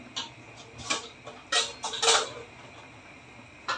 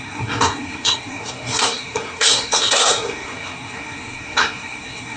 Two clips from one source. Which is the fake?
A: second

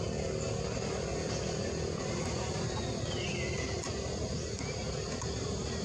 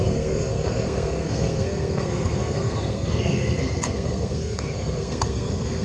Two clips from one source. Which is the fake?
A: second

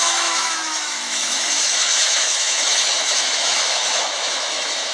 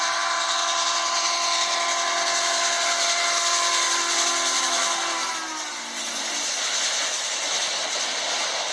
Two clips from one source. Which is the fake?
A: first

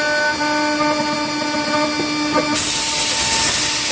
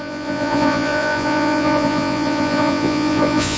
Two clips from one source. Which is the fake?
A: second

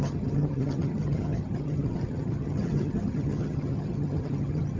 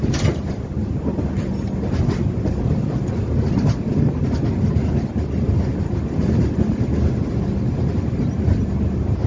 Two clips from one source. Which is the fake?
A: first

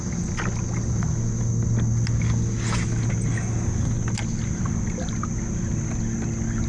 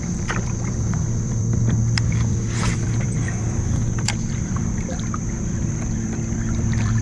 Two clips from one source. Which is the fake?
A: second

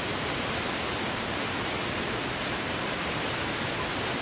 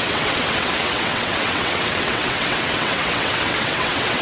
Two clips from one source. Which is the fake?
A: second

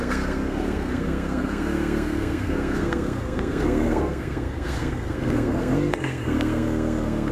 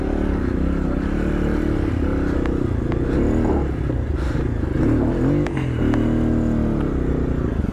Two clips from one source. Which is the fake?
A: first